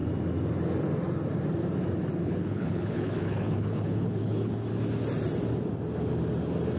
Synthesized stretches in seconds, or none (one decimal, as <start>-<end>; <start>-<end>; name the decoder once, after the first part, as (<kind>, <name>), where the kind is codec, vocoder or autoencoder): 2.2-4.5 (codec, HILCodec)